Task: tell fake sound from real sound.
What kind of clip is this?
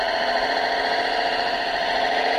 fake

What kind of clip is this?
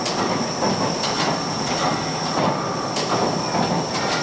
real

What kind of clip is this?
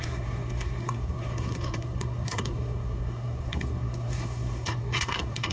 fake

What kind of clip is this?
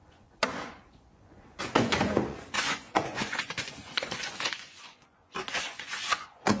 fake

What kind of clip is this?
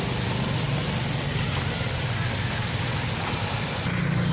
real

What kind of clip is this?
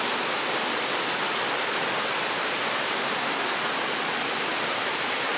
real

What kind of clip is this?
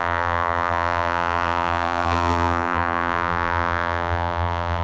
fake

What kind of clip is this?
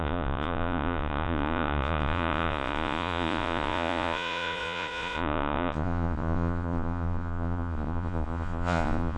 fake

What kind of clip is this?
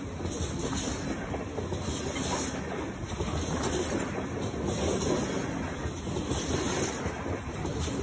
real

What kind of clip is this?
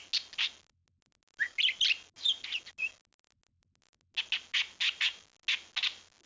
real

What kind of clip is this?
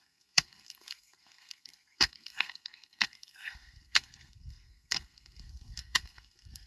fake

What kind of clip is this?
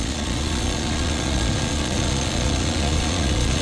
fake